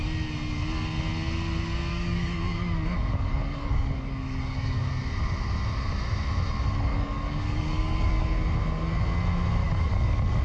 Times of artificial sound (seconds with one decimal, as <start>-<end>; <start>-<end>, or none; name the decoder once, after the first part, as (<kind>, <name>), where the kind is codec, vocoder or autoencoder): 1.9-4.9 (codec, DAC); 6.9-8.1; 9.6-10.4